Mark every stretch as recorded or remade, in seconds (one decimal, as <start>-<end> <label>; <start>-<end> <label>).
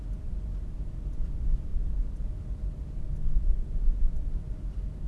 0.0-5.1 recorded